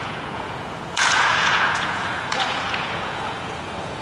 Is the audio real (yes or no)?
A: no